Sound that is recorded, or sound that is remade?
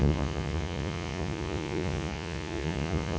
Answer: remade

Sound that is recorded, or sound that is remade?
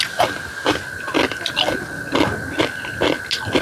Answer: recorded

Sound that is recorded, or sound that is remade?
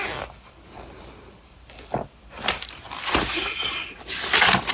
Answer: recorded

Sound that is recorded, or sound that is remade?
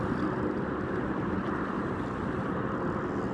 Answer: recorded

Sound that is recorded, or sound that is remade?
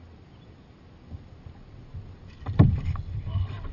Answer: recorded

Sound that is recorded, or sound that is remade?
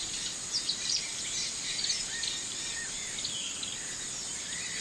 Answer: recorded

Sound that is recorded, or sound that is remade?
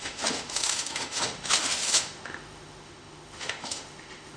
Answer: remade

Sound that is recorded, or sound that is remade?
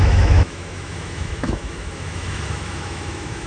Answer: remade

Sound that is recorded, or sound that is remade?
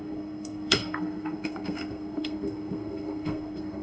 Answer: remade